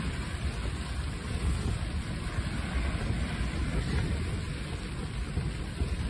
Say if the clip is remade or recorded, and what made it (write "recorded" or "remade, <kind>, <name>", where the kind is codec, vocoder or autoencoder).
recorded